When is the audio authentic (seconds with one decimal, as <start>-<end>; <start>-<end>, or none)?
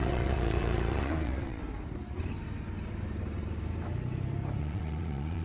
1.6-4.6